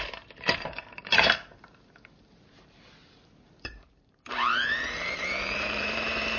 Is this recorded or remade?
remade